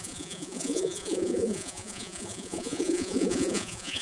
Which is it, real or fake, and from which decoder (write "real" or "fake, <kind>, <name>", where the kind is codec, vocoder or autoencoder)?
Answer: fake, vocoder, Vocos